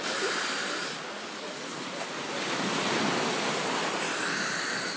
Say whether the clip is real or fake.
real